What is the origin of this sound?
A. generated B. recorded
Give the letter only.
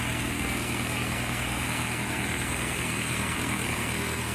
A